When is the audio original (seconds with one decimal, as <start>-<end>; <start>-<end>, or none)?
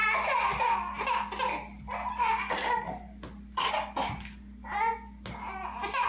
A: 0.0-6.1